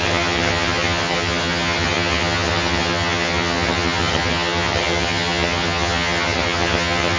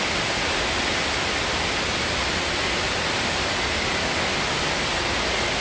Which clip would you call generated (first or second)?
first